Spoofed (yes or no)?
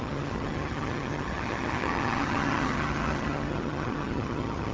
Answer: yes